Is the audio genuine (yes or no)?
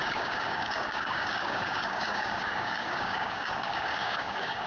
no